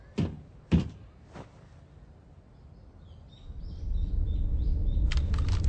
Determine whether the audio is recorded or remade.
recorded